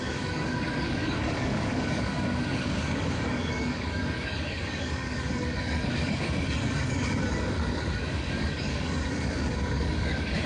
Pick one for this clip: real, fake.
fake